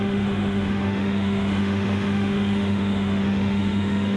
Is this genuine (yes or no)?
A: no